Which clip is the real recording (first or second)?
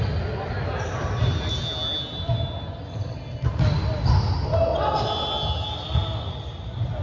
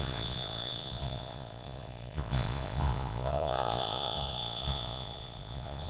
first